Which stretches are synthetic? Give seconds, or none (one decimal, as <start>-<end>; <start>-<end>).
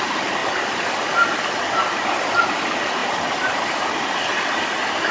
none